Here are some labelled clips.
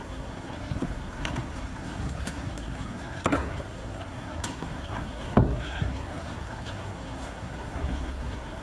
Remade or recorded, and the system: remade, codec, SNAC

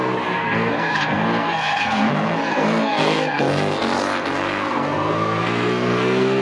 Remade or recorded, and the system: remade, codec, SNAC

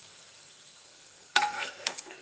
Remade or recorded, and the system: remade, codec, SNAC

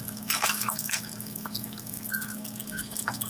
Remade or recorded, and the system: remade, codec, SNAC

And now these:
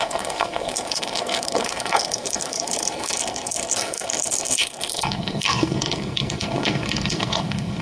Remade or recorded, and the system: remade, codec, SNAC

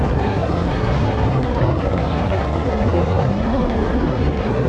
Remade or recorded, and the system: remade, codec, SNAC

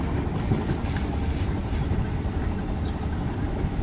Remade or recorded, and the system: recorded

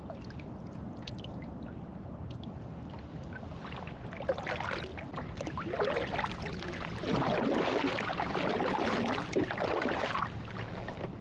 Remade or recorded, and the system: recorded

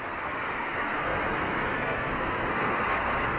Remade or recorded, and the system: remade, codec, SNAC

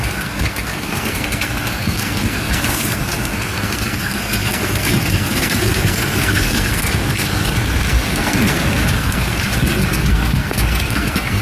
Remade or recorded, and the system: remade, codec, SNAC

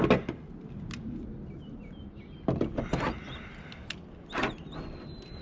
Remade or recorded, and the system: recorded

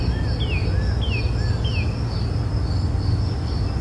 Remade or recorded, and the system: recorded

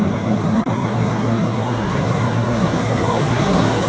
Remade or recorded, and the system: remade, codec, SNAC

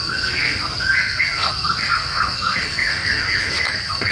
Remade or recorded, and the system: remade, codec, SNAC